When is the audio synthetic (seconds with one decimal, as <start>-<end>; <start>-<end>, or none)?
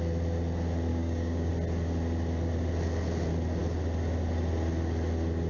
0.9-1.5